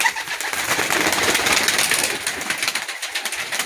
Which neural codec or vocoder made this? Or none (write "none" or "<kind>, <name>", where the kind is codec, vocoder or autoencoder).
none